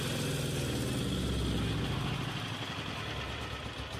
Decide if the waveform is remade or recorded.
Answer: recorded